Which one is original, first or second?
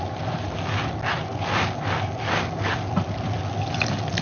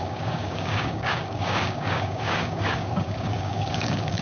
first